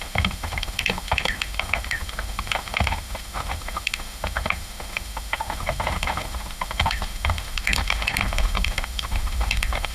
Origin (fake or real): fake